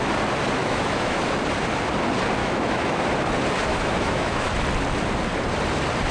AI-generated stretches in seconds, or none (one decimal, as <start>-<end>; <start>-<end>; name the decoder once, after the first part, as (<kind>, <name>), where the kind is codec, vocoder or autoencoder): 0.6-1.2 (autoencoder, DAC-VAE); 2.4-3.1; 3.7-4.5